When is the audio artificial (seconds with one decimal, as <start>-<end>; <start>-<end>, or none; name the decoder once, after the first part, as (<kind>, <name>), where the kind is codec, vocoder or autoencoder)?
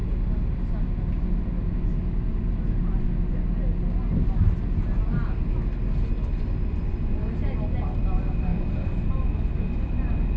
none